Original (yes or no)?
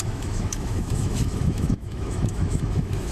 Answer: no